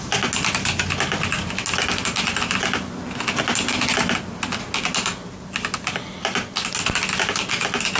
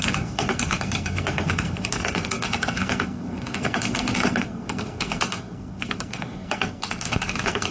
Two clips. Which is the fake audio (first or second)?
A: second